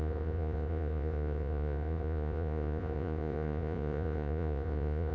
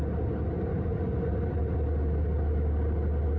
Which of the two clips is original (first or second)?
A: second